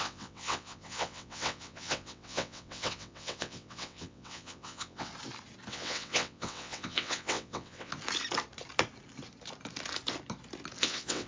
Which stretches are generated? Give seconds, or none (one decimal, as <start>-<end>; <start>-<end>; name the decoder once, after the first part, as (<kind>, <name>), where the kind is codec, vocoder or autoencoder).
0.0-5.1 (vocoder, WaveNeXt); 5.7-7.9; 10.8-11.3